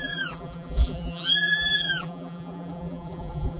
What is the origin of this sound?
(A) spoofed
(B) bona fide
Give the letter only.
A